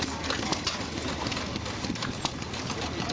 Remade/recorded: recorded